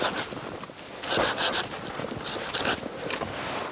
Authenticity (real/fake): real